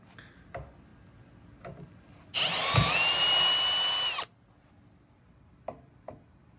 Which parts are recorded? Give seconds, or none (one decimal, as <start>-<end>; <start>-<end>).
0.0-6.6